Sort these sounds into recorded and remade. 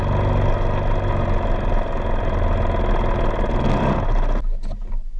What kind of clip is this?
recorded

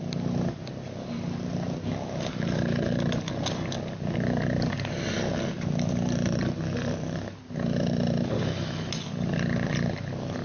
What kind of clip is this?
recorded